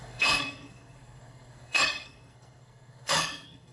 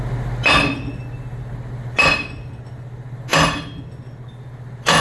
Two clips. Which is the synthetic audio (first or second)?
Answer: first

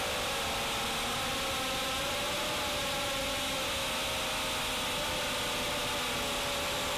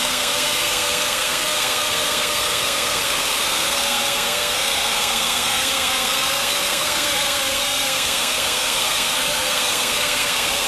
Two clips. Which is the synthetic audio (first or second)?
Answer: second